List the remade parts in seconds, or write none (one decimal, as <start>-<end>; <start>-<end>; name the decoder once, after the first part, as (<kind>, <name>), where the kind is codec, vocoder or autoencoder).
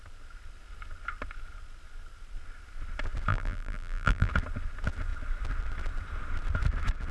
3.3-4.3 (vocoder, BigVGAN v2)